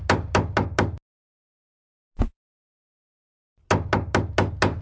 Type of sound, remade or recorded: recorded